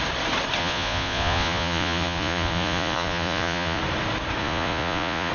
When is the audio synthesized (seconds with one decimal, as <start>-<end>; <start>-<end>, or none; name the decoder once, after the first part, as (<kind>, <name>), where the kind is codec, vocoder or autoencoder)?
0.6-3.8 (vocoder, Vocos); 4.4-5.3